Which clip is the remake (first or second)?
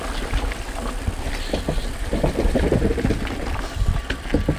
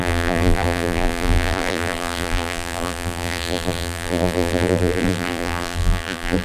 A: second